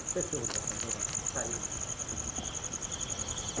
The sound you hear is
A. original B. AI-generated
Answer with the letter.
A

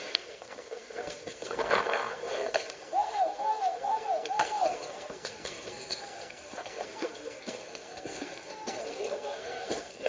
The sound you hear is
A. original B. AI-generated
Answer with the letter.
B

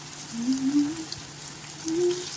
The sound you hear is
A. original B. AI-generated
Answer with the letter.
A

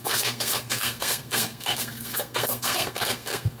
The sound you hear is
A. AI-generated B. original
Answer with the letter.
A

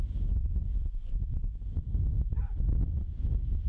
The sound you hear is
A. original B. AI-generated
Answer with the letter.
A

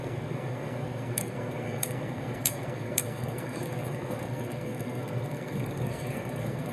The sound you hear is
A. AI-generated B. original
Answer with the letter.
A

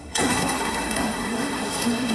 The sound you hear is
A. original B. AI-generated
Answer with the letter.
B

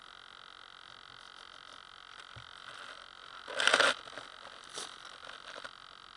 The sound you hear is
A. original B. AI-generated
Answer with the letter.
A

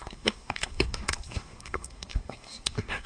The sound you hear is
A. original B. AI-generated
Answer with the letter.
B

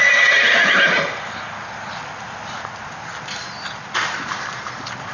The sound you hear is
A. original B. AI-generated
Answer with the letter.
A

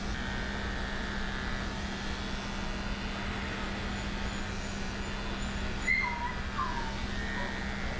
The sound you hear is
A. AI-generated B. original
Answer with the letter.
B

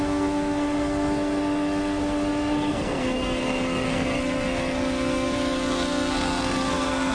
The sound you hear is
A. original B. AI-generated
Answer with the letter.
B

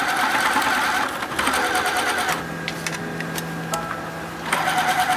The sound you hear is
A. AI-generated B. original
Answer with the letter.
B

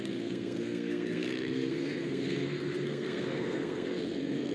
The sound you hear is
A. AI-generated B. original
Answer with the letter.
A